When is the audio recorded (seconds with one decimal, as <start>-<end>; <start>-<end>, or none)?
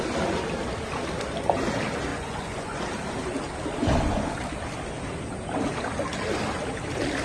0.0-2.1; 2.8-7.2